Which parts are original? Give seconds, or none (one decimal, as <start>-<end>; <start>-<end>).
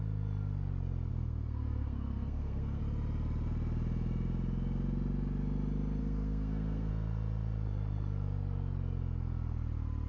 0.0-1.1; 2.8-6.0; 6.9-10.1